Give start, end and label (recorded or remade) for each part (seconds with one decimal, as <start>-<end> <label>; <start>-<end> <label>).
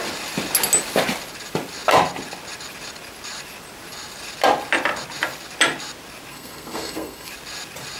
0.0-6.3 recorded; 6.3-7.3 remade; 7.3-8.0 recorded